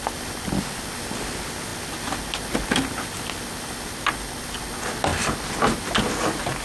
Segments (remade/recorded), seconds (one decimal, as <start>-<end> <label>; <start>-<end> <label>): 0.0-6.6 recorded